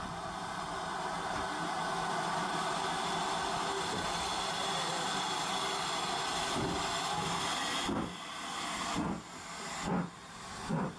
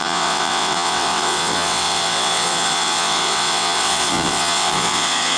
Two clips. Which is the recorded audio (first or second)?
first